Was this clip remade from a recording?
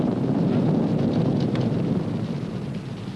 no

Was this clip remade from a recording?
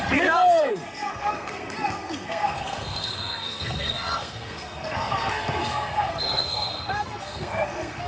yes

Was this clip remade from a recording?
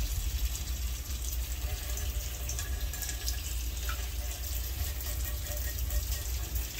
yes